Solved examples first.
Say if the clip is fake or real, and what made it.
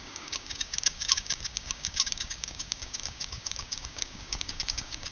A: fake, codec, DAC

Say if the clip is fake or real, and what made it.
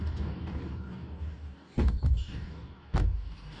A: fake, codec, DAC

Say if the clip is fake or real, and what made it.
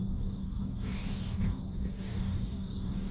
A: fake, codec, DAC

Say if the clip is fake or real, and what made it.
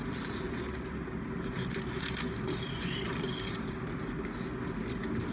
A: real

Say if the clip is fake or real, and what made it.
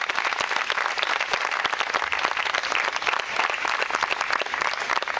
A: real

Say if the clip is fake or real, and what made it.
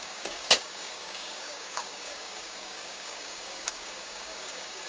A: fake, codec, DAC